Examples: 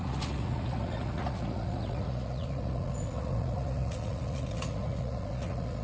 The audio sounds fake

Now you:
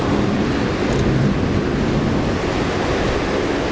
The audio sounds real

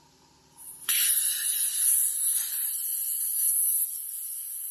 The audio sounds real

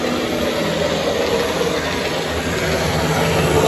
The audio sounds real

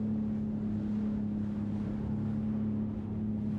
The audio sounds real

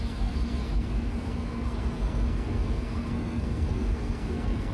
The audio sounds fake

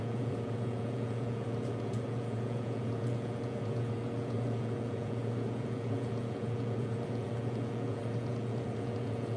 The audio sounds fake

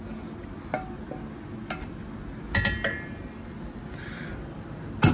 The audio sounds real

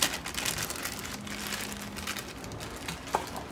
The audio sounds real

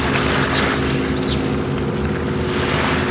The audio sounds real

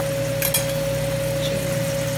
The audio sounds real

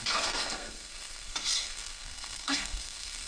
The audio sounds fake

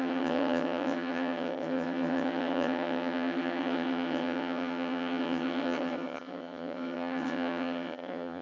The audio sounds fake